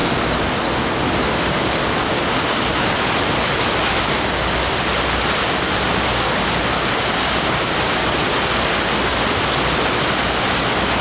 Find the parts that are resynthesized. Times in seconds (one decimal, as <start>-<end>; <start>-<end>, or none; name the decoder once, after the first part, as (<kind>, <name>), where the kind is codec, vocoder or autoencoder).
none